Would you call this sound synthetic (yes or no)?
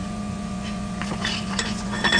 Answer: yes